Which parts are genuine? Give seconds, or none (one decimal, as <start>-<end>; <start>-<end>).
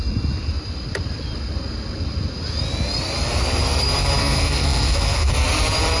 0.0-4.2; 5.3-6.0